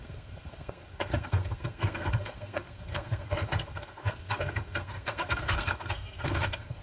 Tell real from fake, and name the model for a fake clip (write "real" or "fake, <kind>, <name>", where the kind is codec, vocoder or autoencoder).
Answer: fake, codec, SNAC